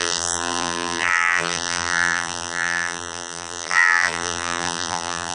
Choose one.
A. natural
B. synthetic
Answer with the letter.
B